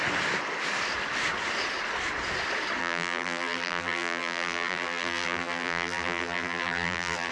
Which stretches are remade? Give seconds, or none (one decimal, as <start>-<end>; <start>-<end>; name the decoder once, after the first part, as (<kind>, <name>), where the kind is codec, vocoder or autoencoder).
2.8-7.3 (vocoder, BigVGAN v2)